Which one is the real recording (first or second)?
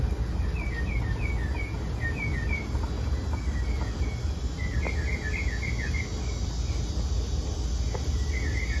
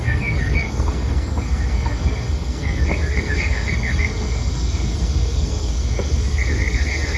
first